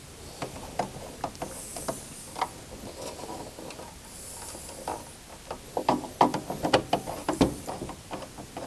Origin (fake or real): real